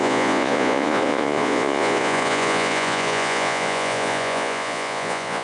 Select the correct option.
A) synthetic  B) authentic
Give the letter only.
A